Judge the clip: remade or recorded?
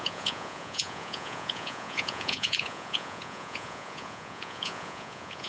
remade